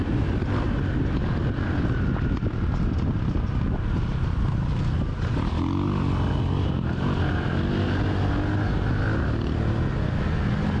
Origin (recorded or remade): recorded